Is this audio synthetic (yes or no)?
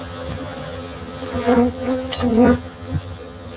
yes